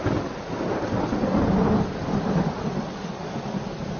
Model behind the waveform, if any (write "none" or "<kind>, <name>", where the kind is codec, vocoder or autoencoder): none